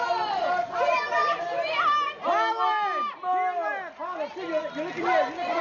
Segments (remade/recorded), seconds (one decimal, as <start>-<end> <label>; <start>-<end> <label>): 0.0-5.6 recorded